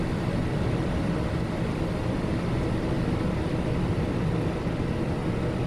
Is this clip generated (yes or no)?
no